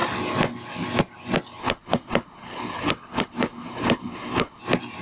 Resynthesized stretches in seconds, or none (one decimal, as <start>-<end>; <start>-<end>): 1.6-4.6

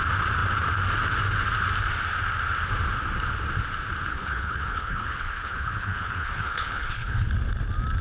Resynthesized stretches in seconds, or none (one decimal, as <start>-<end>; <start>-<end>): 4.1-7.3

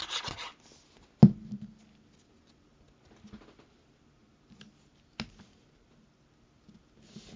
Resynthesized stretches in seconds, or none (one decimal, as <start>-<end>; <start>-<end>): none

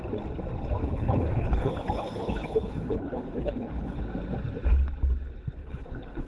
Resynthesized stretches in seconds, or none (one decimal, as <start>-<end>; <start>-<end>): 0.8-4.0; 5.6-6.3

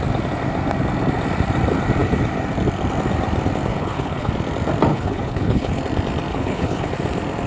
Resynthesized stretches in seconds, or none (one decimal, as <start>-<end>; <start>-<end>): 3.7-4.3; 4.9-5.8; 6.3-6.9